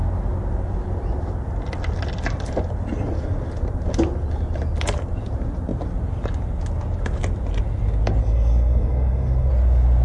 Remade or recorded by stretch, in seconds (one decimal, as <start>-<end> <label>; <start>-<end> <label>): 0.0-8.2 recorded; 8.2-9.5 remade; 9.5-10.0 recorded